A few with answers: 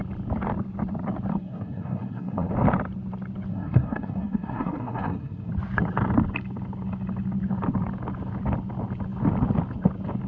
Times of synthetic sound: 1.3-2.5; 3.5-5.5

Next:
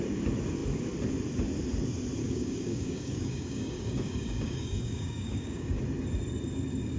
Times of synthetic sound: 2.2-5.8

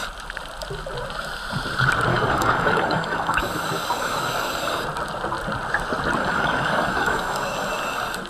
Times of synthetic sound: 2.1-4.8; 6.2-7.4